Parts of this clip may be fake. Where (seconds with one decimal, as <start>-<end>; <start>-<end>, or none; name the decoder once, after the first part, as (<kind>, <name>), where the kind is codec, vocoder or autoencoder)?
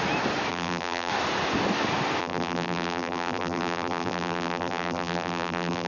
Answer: 0.5-1.1 (vocoder, BigVGAN v2); 2.2-5.9